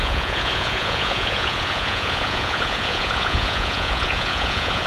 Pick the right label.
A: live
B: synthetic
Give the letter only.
B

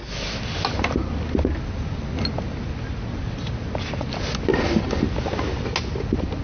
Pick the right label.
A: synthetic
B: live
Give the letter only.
B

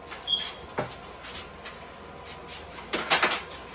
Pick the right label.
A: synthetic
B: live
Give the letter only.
B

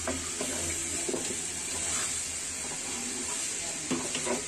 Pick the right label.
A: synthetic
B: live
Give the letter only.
B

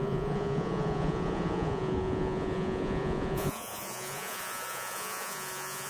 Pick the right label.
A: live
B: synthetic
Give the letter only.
B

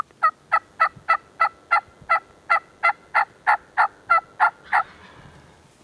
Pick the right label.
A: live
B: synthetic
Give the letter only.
A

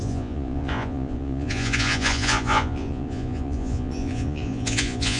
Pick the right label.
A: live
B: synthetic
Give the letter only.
B